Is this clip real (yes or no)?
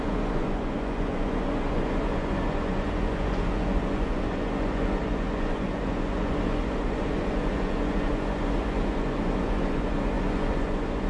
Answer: no